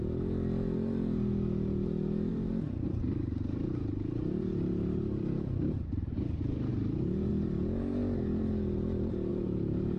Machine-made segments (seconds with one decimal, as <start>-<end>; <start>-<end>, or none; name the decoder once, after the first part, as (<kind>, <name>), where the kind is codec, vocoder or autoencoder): 2.3-6.1 (vocoder, BigVGAN v2); 6.7-7.3; 9.3-10.0